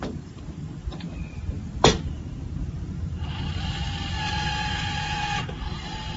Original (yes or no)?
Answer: no